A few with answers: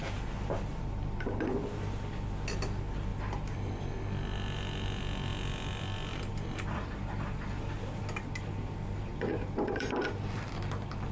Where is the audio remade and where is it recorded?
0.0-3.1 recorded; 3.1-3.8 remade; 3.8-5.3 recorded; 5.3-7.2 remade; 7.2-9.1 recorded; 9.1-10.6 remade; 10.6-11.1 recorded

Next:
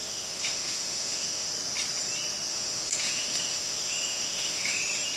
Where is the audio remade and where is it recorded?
0.0-1.5 remade; 1.5-2.5 recorded; 2.5-4.8 remade; 4.8-5.2 recorded

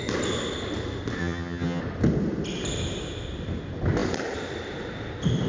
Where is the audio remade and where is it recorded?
0.0-1.2 recorded; 1.2-1.8 remade; 1.8-5.5 recorded

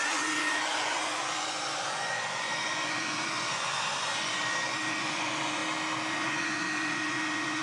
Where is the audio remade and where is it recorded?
0.0-5.6 remade; 5.6-6.1 recorded; 6.1-7.6 remade